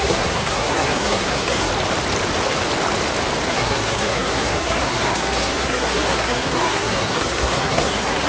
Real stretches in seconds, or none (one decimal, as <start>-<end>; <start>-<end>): 1.7-3.5